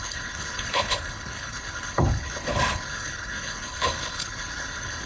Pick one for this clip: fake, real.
fake